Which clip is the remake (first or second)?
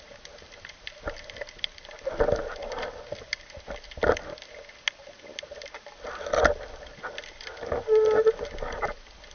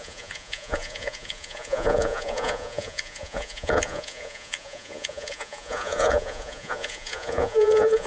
second